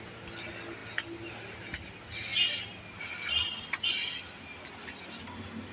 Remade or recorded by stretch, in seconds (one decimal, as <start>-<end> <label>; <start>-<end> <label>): 0.0-5.7 recorded